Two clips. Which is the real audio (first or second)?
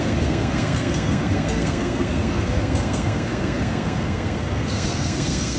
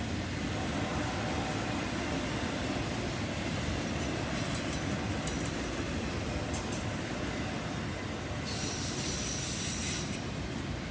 second